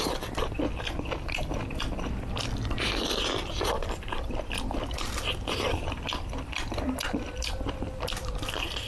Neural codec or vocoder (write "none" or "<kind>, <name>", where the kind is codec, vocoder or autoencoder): vocoder, BigVGAN v2